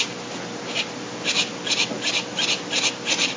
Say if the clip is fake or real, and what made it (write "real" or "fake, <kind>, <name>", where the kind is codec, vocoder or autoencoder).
real